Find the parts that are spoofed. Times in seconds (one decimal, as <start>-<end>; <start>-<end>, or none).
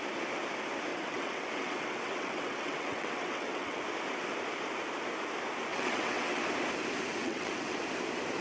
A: 0.9-3.8; 5.7-6.4; 7.2-7.8